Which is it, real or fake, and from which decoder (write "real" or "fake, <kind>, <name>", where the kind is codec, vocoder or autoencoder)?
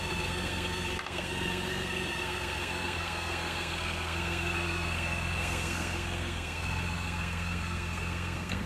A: fake, codec, SNAC